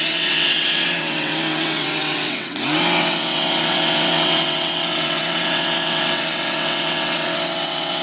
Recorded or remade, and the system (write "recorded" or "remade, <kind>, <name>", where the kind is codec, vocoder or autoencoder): remade, vocoder, WaveNeXt